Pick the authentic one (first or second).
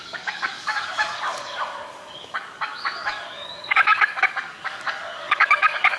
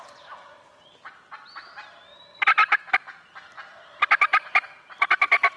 second